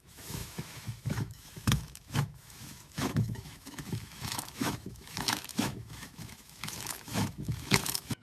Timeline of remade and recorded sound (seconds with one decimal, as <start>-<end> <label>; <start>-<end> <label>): 0.0-8.2 remade